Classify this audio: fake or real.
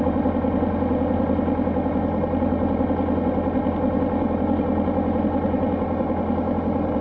real